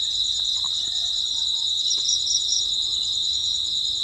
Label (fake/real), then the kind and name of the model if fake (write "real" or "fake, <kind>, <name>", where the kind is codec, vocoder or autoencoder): fake, vocoder, BigVGAN v2